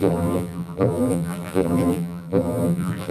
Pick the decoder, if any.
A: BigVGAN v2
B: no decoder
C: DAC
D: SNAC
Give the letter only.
A